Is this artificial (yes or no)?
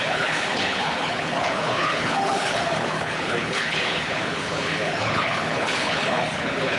yes